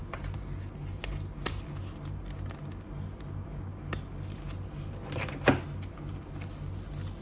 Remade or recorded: recorded